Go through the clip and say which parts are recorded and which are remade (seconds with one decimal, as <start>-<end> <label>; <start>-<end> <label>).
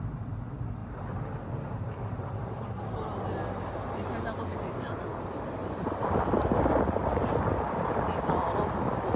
0.0-9.2 recorded